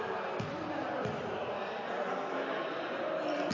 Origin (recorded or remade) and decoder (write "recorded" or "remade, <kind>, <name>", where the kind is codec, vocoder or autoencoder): recorded